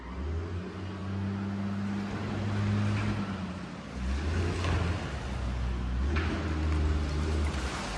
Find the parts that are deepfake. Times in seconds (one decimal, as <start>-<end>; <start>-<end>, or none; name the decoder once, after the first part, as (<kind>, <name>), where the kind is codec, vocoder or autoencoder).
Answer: none